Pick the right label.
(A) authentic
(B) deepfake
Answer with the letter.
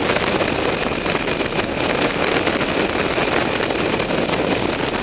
B